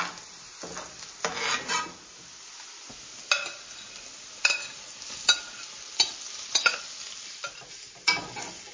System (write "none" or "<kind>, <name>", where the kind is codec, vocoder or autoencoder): none